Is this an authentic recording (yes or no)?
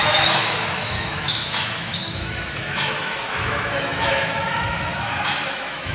no